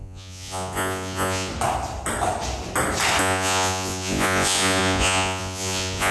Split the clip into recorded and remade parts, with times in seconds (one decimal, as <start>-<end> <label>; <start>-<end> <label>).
0.0-1.5 remade; 1.5-3.2 recorded; 3.2-6.1 remade